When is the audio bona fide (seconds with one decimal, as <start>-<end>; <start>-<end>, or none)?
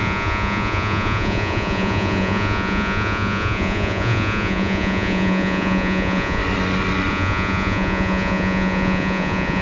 6.4-7.1